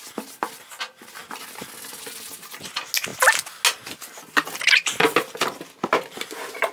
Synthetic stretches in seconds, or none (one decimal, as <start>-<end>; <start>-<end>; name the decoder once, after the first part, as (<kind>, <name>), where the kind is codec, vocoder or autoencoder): none